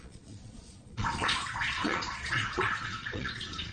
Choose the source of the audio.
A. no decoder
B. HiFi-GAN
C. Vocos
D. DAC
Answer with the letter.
C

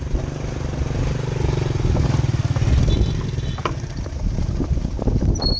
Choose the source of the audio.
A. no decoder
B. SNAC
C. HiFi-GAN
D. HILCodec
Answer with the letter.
A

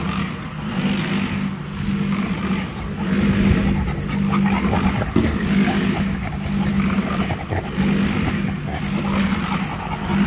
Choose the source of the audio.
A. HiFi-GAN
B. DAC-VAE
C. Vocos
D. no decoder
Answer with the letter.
D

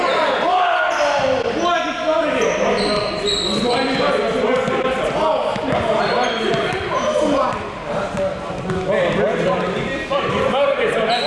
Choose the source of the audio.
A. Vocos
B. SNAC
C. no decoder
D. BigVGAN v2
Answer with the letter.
C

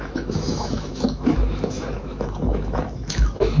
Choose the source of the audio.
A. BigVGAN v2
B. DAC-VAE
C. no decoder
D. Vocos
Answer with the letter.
B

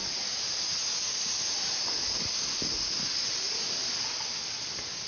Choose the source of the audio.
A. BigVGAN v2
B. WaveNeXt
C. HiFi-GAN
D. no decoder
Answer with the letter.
D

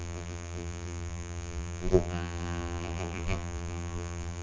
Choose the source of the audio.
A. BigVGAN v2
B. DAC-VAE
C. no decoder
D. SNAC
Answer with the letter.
A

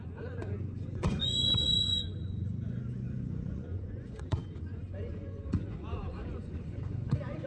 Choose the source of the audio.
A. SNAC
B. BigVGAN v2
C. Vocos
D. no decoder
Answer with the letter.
C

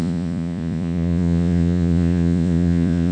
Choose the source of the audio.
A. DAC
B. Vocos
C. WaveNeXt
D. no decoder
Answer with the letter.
B